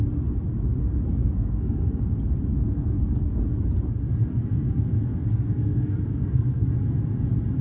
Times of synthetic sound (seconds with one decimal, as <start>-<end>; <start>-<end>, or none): 0.8-2.0; 2.5-3.4; 4.3-6.7

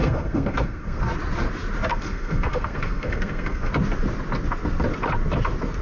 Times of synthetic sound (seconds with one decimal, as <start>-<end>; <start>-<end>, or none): 0.0-1.0; 1.9-3.7